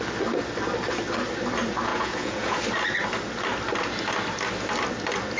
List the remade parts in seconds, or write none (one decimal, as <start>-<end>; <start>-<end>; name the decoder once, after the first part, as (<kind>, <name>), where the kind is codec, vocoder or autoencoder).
1.9-2.6 (vocoder, Vocos)

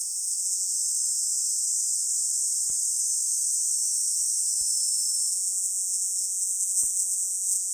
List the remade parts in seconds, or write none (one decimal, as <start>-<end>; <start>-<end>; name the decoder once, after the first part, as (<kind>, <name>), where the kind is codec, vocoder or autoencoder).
0.0-0.7 (vocoder, Vocos); 5.3-7.7

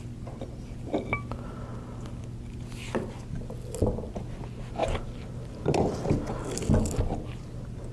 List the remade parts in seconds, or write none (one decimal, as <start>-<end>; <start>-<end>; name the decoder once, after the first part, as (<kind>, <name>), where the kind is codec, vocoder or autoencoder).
none

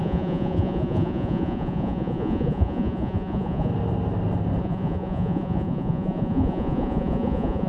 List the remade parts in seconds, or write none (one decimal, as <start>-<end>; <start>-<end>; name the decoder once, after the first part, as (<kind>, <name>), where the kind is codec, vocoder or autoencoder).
0.0-3.7 (vocoder, Vocos); 4.6-7.7

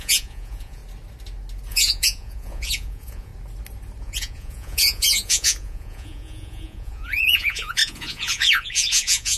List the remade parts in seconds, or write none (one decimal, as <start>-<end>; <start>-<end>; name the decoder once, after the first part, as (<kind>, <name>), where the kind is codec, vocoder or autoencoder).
0.0-0.8 (vocoder, Vocos); 1.7-3.3; 4.0-9.4

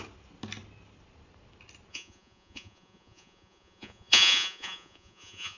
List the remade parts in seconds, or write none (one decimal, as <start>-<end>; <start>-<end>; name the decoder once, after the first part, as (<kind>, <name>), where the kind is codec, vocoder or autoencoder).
1.9-5.6 (vocoder, Vocos)